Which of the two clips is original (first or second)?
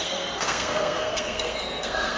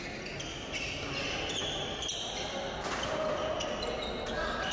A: second